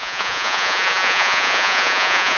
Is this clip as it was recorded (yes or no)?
no